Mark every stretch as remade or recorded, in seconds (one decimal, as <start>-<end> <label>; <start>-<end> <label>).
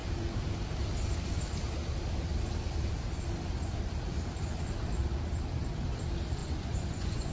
0.0-6.4 recorded; 6.4-7.3 remade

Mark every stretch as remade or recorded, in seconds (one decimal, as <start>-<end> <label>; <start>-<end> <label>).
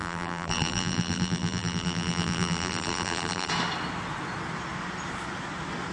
0.0-3.5 remade; 3.5-5.9 recorded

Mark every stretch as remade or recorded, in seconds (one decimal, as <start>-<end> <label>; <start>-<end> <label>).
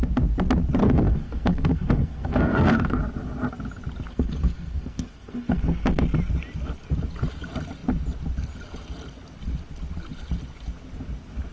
0.0-0.8 recorded; 0.8-3.0 remade; 3.0-4.1 recorded; 4.1-6.0 remade; 6.0-11.5 recorded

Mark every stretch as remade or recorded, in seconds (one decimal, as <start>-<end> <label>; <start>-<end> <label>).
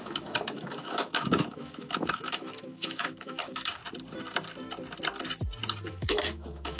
0.0-3.8 remade; 3.8-5.9 recorded; 5.9-6.8 remade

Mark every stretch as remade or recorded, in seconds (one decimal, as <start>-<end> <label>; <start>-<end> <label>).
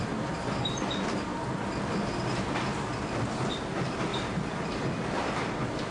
0.0-4.1 recorded; 4.1-5.4 remade; 5.4-5.9 recorded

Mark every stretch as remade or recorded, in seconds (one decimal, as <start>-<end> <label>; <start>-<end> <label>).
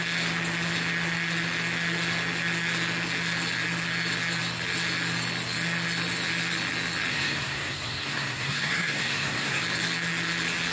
0.0-7.1 recorded; 7.1-9.6 remade; 9.6-10.7 recorded